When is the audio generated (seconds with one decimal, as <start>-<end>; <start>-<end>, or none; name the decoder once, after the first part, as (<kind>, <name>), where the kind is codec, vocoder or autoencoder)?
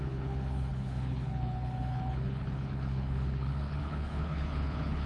0.0-5.1 (codec, HILCodec)